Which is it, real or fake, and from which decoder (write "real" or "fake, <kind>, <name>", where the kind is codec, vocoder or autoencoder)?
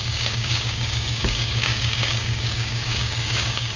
fake, codec, DAC